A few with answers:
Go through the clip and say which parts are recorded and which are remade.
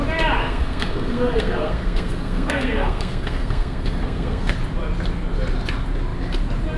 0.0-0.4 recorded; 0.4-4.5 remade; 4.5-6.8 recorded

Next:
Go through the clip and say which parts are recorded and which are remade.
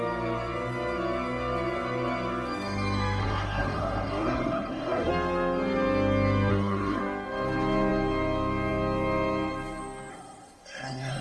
0.0-3.2 recorded; 3.2-5.1 remade; 5.1-6.5 recorded; 6.5-7.0 remade; 7.0-10.1 recorded; 10.1-11.2 remade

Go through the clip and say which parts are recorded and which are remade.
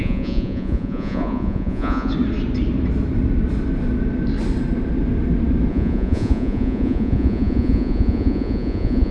0.0-2.1 remade; 2.1-5.7 recorded; 5.7-9.1 remade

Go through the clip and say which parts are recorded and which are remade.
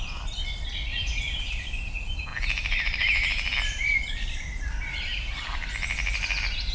0.0-0.9 recorded; 0.9-1.4 remade; 1.4-2.3 recorded; 2.3-5.7 remade; 5.7-6.7 recorded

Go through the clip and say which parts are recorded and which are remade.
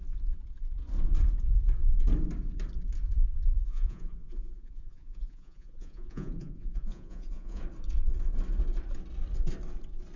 0.0-3.6 recorded; 3.6-7.6 remade; 7.6-10.2 recorded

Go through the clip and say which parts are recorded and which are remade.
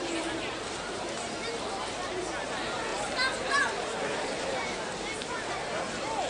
0.0-1.5 recorded; 1.5-2.1 remade; 2.1-2.9 recorded; 2.9-5.5 remade; 5.5-6.3 recorded